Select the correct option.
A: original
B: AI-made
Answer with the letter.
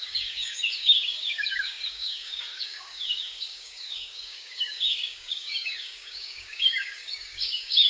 B